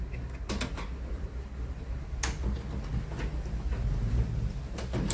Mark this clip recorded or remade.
recorded